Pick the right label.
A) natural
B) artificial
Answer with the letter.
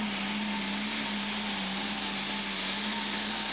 A